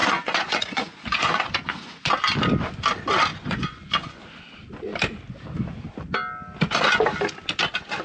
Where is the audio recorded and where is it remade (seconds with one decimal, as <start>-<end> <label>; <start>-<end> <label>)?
0.0-2.1 remade; 2.1-3.3 recorded; 3.3-4.2 remade; 4.2-8.0 recorded